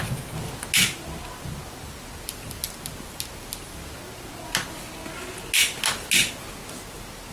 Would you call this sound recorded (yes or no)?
yes